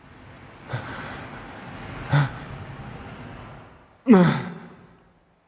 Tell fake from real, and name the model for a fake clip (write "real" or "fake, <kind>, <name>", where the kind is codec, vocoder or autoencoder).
real